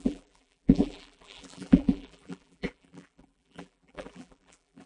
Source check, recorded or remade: remade